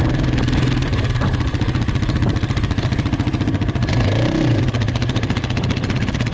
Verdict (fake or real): real